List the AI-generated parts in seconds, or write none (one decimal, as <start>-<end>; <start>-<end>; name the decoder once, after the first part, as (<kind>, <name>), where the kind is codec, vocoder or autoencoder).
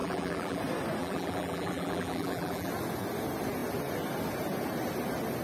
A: 0.0-0.6 (vocoder, BigVGAN v2); 1.0-2.7